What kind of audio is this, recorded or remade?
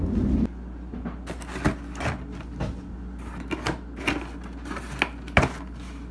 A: recorded